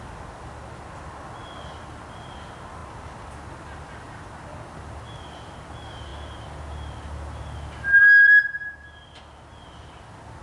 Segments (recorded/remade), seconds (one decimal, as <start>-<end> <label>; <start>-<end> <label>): 0.0-10.4 recorded